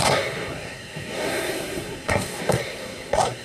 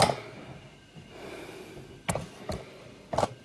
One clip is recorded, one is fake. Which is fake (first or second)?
first